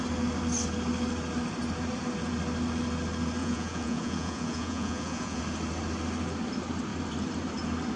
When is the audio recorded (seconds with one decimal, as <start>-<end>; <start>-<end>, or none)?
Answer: 0.0-3.4; 5.4-8.0